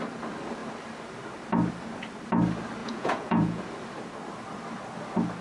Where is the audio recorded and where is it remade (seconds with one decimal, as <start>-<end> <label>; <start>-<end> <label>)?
0.0-2.8 recorded; 2.8-3.6 remade; 3.6-5.4 recorded

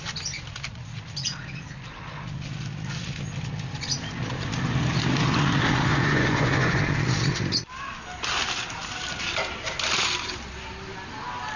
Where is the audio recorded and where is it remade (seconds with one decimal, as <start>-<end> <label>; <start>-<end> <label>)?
0.0-5.9 recorded; 5.9-6.8 remade; 6.8-11.6 recorded

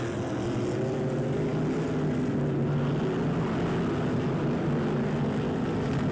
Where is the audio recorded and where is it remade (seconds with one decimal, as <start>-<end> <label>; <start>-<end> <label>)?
0.0-6.1 recorded